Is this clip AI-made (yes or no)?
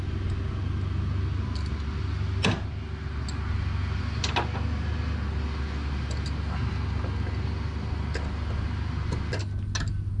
no